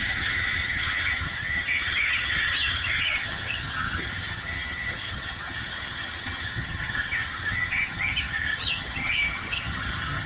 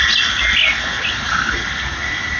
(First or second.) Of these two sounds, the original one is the second